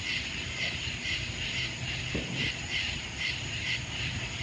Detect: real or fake real